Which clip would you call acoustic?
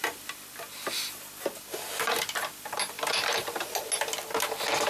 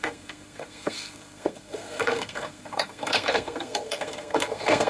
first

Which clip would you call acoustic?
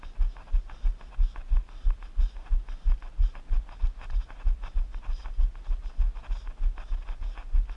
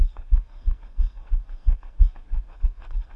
first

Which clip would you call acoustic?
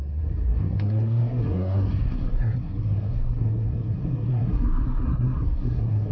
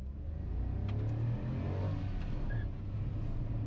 second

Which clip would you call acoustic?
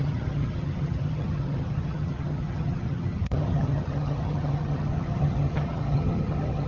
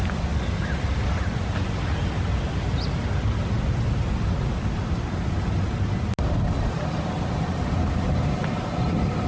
second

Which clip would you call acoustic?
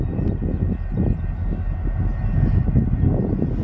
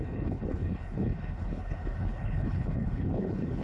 first